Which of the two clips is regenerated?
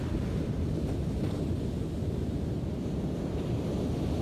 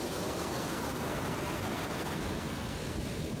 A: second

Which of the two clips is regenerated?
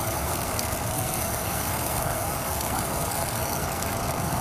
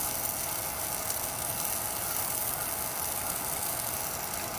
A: first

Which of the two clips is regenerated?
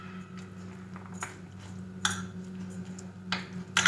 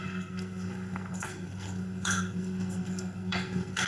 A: second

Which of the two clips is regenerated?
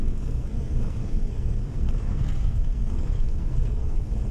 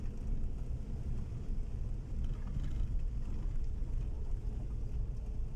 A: first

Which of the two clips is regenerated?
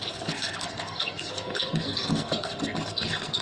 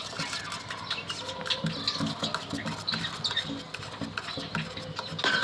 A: first